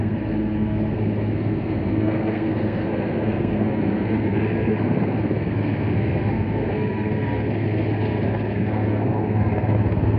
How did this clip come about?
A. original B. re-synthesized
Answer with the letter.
B